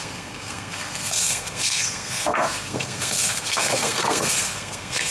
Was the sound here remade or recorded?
remade